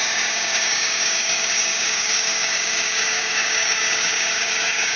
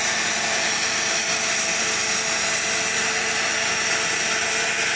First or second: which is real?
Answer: second